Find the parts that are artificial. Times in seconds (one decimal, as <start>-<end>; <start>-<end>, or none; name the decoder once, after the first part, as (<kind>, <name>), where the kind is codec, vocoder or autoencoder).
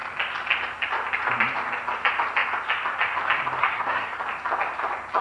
3.6-4.2 (codec, SNAC)